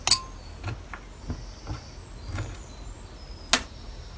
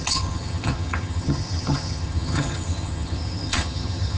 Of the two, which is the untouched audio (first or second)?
first